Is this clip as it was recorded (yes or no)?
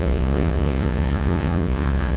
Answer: no